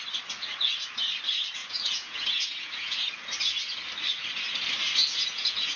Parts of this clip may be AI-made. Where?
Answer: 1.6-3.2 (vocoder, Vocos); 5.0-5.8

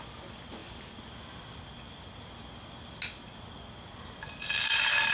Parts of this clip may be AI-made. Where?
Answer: none

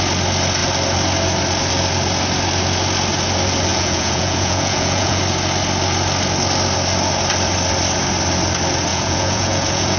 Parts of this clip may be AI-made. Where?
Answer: 3.7-5.2 (vocoder, Vocos); 8.9-10.0